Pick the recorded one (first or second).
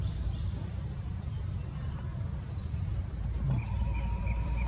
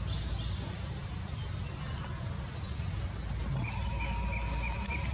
second